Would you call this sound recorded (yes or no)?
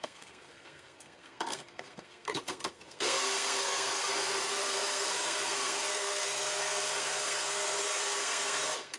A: no